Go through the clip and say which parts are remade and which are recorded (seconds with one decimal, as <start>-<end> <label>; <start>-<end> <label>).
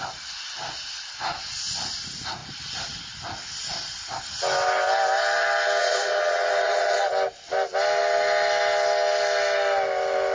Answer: 0.0-5.8 recorded; 5.8-7.1 remade; 7.1-10.3 recorded